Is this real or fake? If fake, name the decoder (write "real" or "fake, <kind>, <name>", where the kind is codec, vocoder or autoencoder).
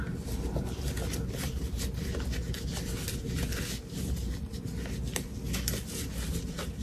real